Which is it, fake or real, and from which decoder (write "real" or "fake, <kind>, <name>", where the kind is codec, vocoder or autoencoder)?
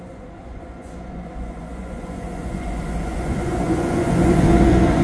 fake, vocoder, Vocos